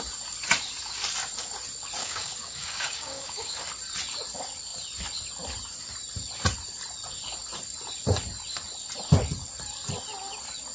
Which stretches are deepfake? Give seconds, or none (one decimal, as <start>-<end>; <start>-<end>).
2.0-3.5